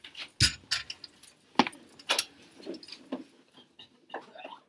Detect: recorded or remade recorded